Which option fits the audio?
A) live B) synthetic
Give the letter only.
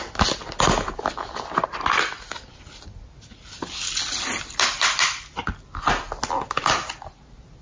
A